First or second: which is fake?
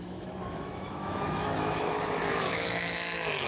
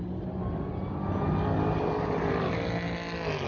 first